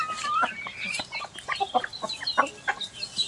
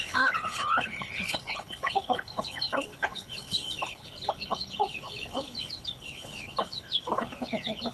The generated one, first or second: second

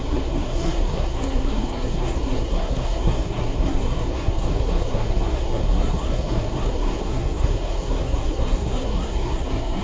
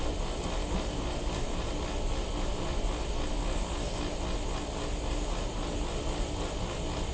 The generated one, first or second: first